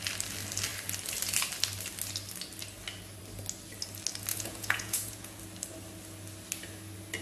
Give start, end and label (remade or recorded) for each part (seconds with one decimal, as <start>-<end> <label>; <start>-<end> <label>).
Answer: 0.0-4.3 recorded; 4.3-5.4 remade; 5.4-7.2 recorded